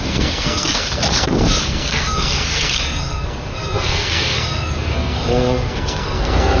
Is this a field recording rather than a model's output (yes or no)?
no